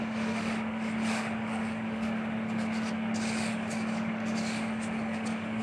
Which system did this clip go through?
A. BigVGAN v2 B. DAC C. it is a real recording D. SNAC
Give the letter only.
B